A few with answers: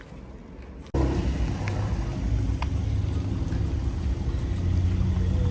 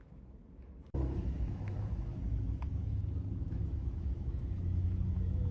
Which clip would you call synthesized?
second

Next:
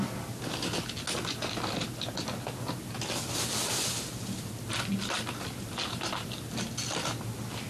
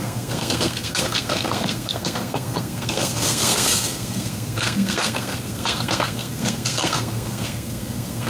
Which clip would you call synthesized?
second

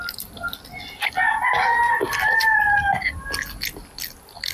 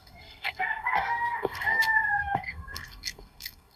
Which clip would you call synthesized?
second